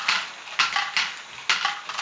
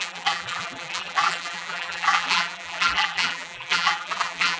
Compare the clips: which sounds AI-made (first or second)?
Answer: second